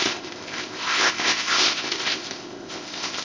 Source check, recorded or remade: remade